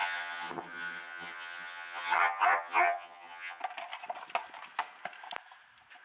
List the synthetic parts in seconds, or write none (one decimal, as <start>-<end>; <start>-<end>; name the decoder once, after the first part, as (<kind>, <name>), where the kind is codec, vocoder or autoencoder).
0.0-3.6 (vocoder, HiFi-GAN)